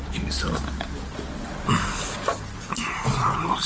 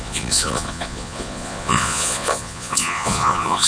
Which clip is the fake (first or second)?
second